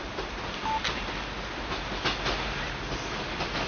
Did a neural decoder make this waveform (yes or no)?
no